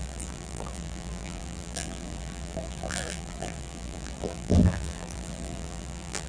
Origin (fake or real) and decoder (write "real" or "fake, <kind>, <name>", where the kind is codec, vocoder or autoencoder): fake, vocoder, BigVGAN v2